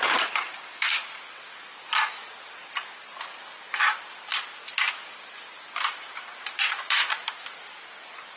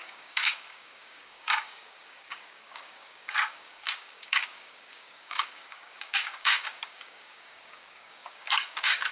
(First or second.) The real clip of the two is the first